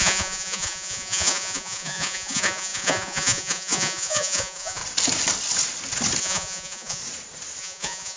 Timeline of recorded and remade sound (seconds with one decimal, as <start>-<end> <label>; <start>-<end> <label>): 0.0-4.8 remade; 4.8-6.2 recorded; 6.2-7.0 remade; 7.0-7.6 recorded; 7.6-8.2 remade